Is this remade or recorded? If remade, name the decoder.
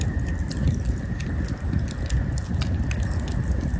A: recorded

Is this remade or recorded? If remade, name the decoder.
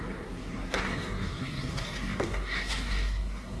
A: remade, codec, SNAC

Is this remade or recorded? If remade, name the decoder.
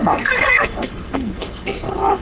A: remade, codec, SNAC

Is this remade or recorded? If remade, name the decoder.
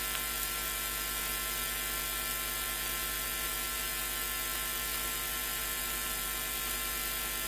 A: recorded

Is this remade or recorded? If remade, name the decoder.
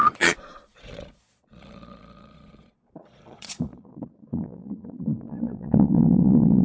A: remade, vocoder, Vocos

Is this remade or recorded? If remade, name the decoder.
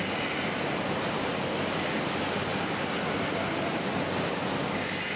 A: recorded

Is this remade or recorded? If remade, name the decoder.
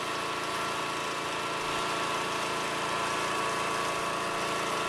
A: recorded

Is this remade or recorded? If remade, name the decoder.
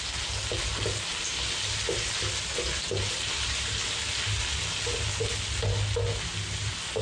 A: recorded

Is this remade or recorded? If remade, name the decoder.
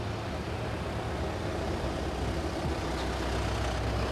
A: recorded